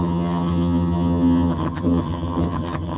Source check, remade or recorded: remade